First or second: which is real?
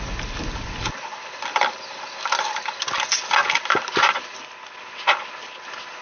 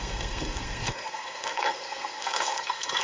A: first